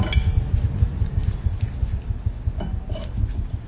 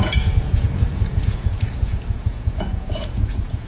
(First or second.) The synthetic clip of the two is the second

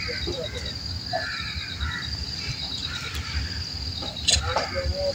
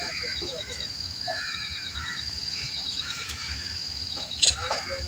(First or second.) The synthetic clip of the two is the second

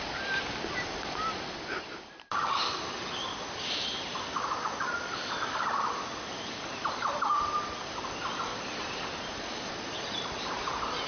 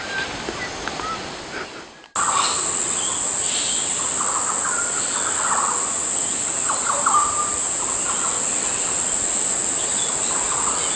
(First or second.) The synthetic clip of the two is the first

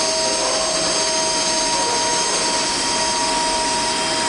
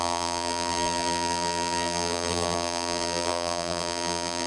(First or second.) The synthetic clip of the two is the second